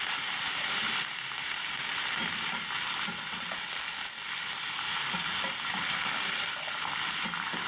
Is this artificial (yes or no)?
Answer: no